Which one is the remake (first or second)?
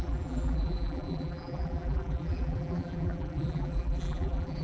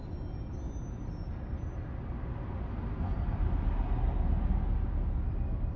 first